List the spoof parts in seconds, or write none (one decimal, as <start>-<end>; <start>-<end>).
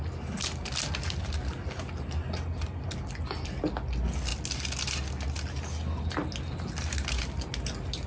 none